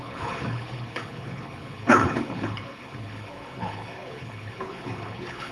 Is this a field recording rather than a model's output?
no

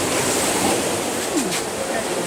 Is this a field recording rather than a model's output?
yes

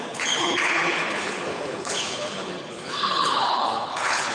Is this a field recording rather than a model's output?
no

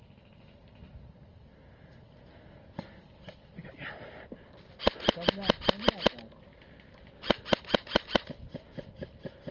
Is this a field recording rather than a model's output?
yes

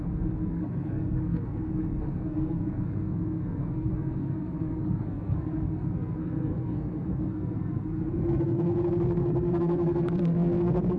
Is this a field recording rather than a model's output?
no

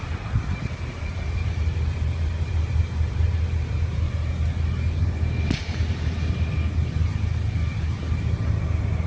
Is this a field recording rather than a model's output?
yes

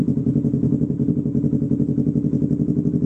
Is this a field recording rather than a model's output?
yes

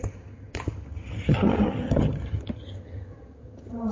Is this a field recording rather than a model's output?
no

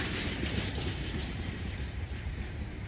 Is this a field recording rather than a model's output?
no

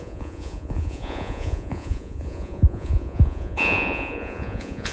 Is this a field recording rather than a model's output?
no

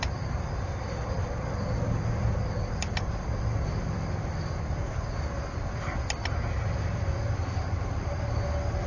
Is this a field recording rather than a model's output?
yes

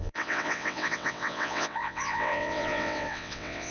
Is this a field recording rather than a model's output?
no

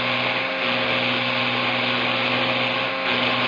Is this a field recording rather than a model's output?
yes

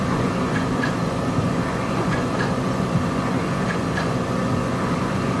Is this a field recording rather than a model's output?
no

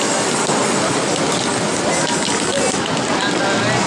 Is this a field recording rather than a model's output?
yes